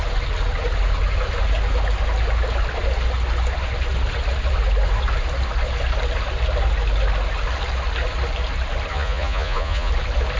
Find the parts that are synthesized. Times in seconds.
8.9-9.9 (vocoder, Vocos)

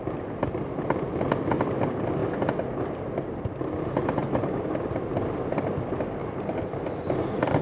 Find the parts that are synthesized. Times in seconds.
none

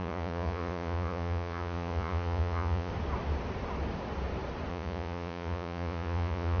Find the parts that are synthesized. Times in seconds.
0.0-2.9 (vocoder, Vocos); 4.7-6.6

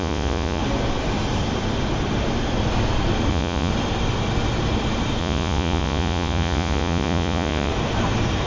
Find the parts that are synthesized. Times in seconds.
0.0-0.6 (vocoder, Vocos); 3.3-3.7; 5.2-7.7

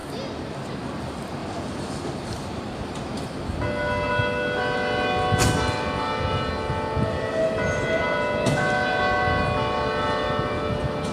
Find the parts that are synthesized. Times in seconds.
none

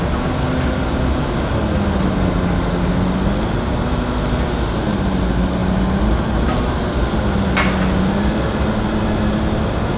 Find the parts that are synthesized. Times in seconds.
none